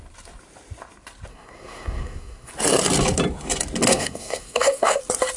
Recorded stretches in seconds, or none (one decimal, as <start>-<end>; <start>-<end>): 0.0-1.3; 2.5-3.9; 5.0-5.4